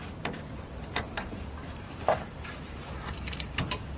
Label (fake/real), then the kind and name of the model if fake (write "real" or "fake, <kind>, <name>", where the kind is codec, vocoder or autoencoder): fake, vocoder, BigVGAN v2